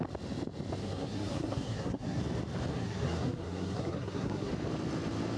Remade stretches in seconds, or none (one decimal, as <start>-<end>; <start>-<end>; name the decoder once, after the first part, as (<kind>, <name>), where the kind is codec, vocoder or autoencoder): 0.8-2.2 (codec, SNAC); 2.7-4.5